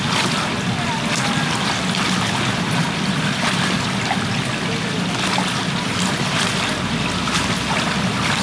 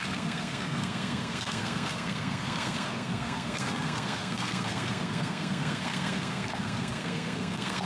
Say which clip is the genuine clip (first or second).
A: first